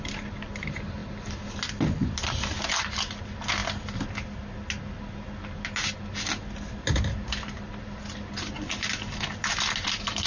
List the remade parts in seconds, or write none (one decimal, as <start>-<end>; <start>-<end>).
none